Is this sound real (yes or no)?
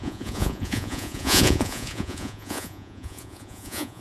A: no